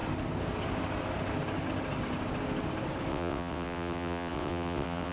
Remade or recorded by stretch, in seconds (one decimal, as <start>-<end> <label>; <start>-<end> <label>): 0.0-3.1 recorded; 3.1-5.1 remade